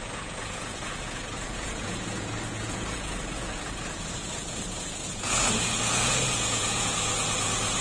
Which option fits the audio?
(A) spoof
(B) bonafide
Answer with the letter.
A